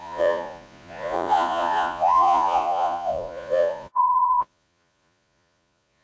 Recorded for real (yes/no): no